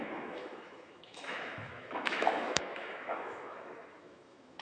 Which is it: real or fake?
fake